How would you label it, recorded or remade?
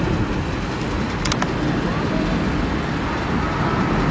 recorded